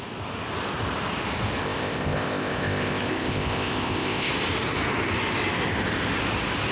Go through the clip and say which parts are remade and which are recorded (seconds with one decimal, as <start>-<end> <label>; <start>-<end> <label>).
0.0-1.6 recorded; 1.6-4.3 remade; 4.3-6.7 recorded